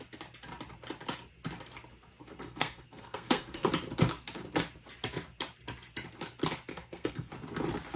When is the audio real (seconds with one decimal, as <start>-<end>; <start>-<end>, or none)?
0.0-2.2; 3.7-6.7; 7.3-8.0